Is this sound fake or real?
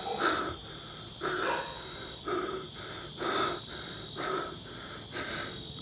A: real